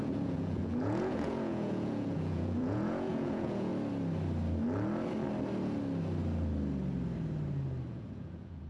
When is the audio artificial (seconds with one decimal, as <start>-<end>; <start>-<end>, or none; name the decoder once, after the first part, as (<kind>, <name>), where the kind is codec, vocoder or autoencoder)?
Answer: 0.0-3.7 (vocoder, Vocos); 7.9-8.7